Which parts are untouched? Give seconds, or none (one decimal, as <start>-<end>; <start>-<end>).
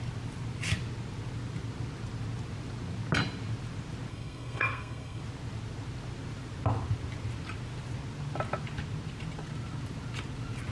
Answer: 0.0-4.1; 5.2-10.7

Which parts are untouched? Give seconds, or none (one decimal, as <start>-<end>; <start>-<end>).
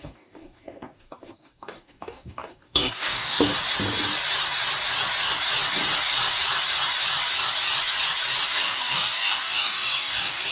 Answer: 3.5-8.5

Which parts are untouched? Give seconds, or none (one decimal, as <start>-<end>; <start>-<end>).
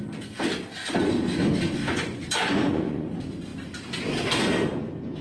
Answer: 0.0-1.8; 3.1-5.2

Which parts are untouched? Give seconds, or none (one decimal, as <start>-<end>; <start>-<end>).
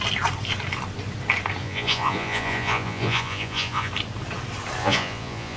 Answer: 0.0-1.6; 3.9-4.8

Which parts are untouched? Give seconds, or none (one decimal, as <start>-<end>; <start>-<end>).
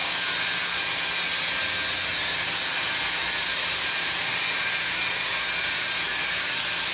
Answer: 0.0-3.4; 4.3-6.9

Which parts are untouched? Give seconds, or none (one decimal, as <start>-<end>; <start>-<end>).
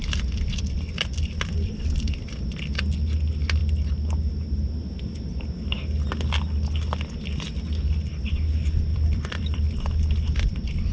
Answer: 0.0-1.2; 2.8-8.9; 9.6-10.9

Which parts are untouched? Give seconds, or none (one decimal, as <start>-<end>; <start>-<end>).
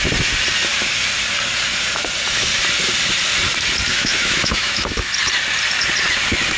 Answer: 0.0-3.9; 5.1-6.6